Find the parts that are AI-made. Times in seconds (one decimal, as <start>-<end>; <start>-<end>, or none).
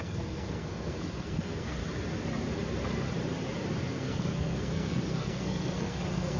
0.0-1.8; 3.9-6.4